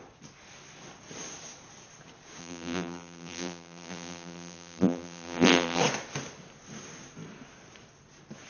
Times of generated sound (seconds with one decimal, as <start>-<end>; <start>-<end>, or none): 2.4-5.8